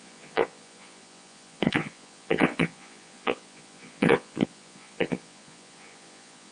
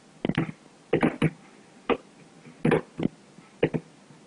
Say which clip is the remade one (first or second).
first